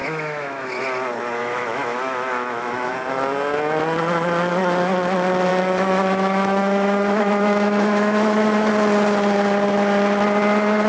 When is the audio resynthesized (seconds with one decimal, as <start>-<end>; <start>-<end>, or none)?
0.0-0.7; 1.4-2.9; 5.5-8.7